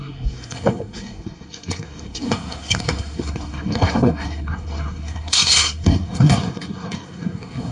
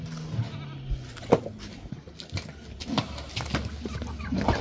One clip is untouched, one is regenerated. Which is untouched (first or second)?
second